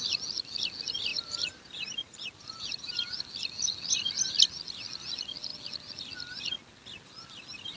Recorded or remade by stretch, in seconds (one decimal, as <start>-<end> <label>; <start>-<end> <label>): 0.0-1.1 recorded; 1.1-3.2 remade; 3.2-7.8 recorded